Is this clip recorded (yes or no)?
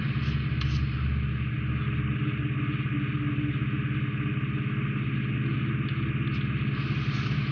yes